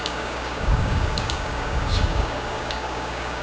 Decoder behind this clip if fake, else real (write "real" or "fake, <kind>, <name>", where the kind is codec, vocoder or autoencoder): fake, codec, DAC